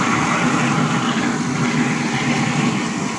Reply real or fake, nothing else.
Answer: real